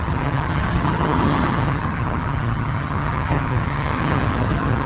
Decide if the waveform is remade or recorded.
remade